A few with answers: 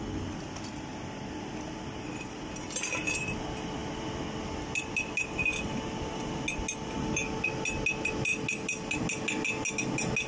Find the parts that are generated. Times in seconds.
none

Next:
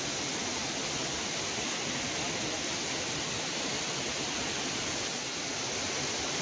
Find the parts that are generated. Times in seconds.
none

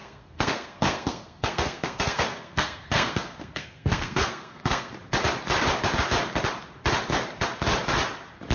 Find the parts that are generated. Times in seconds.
0.0-4.9 (codec, SNAC)

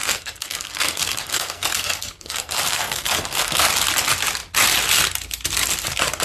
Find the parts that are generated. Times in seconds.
0.0-3.7 (codec, SNAC)

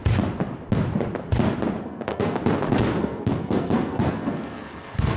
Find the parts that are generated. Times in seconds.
1.8-2.4 (codec, SNAC); 3.0-5.2